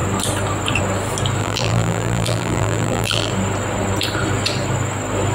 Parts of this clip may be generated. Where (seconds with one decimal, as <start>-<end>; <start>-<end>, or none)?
1.4-3.3